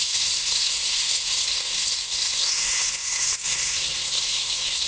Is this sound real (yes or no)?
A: no